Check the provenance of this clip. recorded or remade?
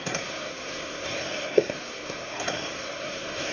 remade